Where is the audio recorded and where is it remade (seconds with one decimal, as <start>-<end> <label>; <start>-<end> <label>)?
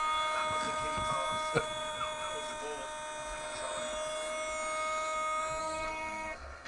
0.0-5.6 recorded; 5.6-6.7 remade